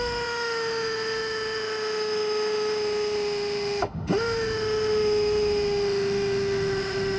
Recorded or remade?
remade